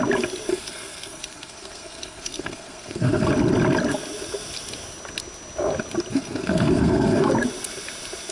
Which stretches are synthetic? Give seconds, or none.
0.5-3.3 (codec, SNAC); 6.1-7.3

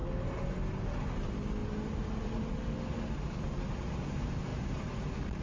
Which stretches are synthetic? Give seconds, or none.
none

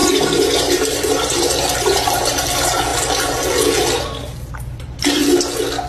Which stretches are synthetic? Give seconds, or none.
0.0-2.4 (vocoder, BigVGAN v2)

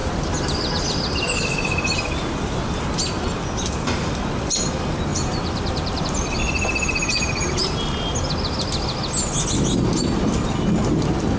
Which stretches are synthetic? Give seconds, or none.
5.1-6.0 (vocoder, BigVGAN v2)